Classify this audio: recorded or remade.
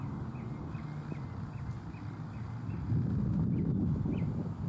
recorded